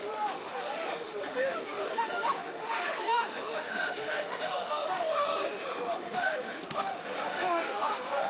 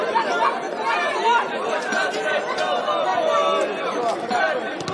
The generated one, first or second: first